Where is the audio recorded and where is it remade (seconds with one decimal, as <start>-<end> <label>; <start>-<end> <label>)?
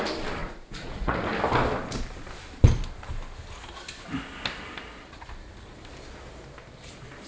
0.0-0.4 recorded; 0.4-1.2 remade; 1.2-7.3 recorded